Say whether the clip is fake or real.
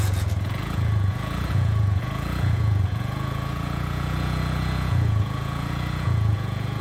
fake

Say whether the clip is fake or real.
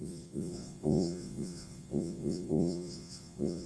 fake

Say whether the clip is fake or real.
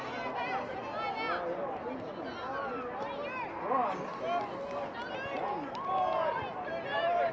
real